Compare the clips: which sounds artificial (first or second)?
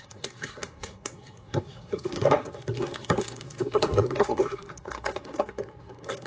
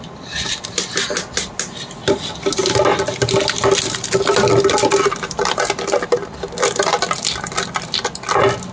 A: first